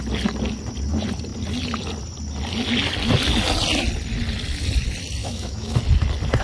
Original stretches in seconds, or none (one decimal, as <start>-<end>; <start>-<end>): 0.0-5.2; 5.8-6.4